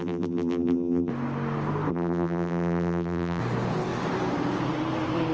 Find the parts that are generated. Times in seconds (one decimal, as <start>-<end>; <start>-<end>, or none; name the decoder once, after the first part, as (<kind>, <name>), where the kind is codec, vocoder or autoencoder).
0.0-1.1 (vocoder, BigVGAN v2); 1.9-3.4